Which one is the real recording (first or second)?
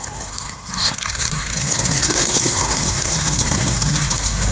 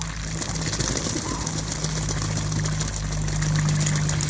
second